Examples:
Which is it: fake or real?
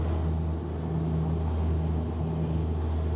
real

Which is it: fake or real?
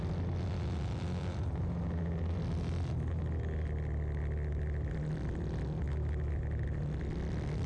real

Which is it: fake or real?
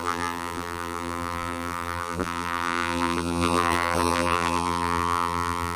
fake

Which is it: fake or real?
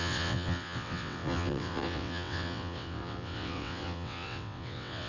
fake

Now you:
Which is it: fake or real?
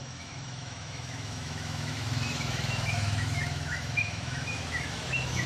fake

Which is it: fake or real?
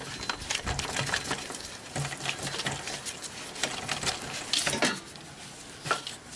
real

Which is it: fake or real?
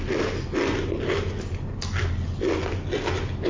real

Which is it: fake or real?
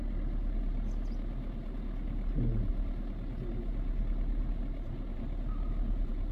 real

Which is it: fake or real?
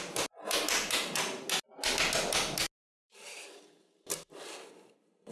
real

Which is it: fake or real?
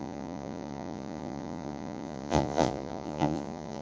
fake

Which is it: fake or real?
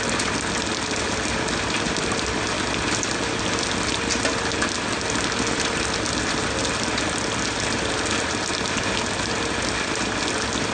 real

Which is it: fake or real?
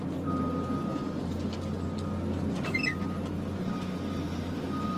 real